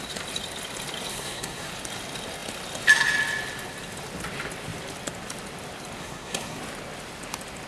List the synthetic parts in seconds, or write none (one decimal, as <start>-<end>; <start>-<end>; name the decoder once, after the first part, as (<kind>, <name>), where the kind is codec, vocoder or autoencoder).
1.1-1.7 (codec, SNAC); 6.0-6.6